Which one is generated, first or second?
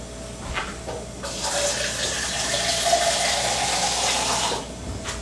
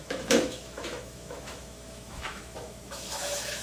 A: second